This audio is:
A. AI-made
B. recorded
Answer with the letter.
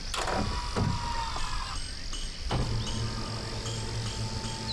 B